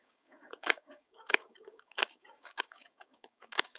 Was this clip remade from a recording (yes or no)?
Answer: yes